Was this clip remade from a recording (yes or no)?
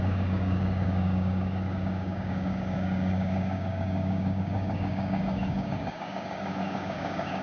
yes